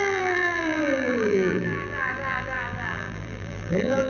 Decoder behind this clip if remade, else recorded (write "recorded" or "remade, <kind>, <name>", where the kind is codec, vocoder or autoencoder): remade, vocoder, BigVGAN v2